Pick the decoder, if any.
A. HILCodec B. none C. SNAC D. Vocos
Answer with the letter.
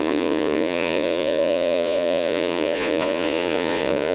D